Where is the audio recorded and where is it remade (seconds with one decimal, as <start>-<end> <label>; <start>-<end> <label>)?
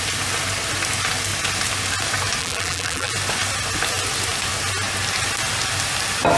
0.0-2.4 recorded; 2.4-3.1 remade; 3.1-6.4 recorded